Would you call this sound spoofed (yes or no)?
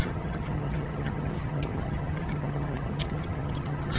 yes